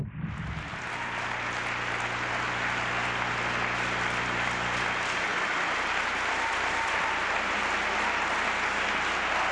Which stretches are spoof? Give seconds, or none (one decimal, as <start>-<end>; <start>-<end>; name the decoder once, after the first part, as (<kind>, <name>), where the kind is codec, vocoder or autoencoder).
5.3-7.6 (vocoder, BigVGAN v2)